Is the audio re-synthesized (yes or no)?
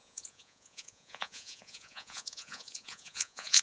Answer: yes